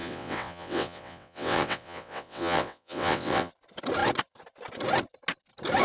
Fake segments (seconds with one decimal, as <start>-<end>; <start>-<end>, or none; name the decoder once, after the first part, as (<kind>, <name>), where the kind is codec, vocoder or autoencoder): 0.0-3.5 (vocoder, WaveNeXt)